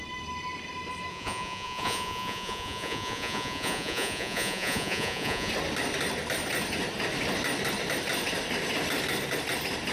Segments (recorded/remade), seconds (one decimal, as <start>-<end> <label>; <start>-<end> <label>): 0.0-1.1 recorded; 1.1-5.5 remade; 5.5-9.9 recorded